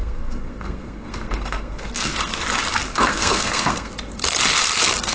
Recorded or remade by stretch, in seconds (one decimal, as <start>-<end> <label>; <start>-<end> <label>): 0.0-2.3 remade; 2.3-2.9 recorded; 2.9-3.9 remade; 3.9-5.1 recorded